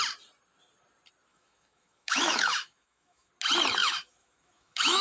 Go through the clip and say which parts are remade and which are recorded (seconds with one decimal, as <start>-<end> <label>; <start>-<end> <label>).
0.0-1.3 recorded; 1.3-3.3 remade; 3.3-3.8 recorded; 3.8-5.0 remade